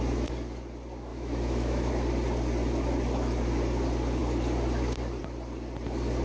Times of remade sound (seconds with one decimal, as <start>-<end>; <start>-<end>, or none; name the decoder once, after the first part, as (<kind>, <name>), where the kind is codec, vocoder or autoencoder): 1.1-1.9 (autoencoder, DAC-VAE)